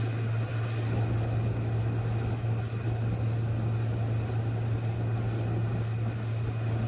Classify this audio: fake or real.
real